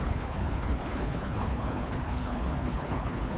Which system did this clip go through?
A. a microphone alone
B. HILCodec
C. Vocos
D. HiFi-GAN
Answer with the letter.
B